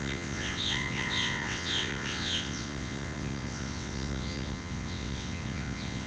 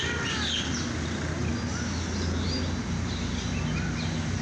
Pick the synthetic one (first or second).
first